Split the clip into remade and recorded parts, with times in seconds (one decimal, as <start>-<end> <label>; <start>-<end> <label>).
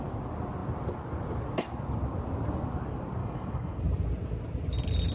0.0-3.2 recorded; 3.2-3.8 remade; 3.8-5.1 recorded